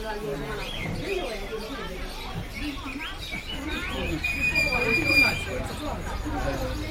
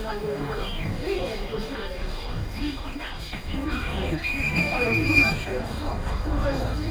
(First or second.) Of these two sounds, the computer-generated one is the second